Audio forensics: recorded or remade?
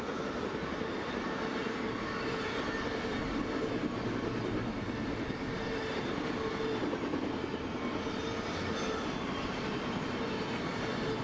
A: recorded